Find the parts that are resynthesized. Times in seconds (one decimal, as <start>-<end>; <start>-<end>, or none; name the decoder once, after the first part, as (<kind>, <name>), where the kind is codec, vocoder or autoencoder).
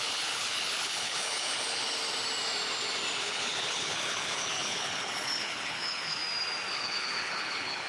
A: 0.0-2.0 (codec, HILCodec); 3.2-6.2; 6.7-7.9